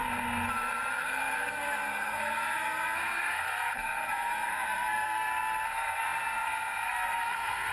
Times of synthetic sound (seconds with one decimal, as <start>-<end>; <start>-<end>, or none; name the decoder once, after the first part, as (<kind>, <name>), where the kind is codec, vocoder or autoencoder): 1.0-7.7 (codec, SNAC)